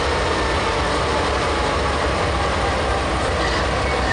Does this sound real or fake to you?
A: real